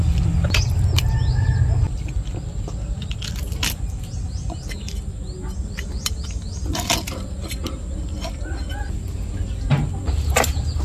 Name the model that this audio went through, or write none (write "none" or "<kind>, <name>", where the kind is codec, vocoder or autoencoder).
none